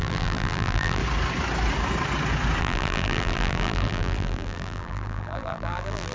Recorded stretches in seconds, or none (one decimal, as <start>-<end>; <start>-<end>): 1.0-2.6